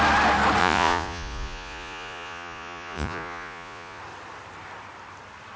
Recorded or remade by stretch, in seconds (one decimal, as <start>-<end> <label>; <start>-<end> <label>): 0.0-0.6 recorded; 0.6-4.0 remade; 4.0-5.6 recorded